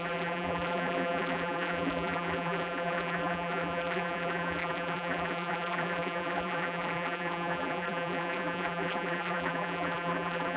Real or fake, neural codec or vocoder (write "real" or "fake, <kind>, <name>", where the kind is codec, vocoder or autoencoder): fake, vocoder, BigVGAN v2